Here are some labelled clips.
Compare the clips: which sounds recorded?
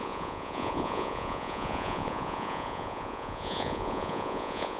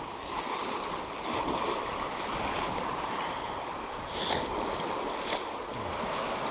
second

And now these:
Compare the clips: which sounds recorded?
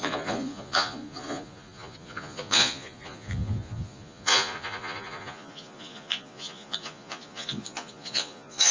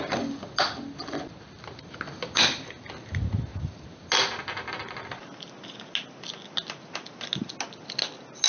second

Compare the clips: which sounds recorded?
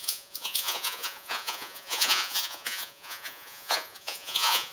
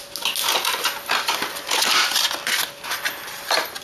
second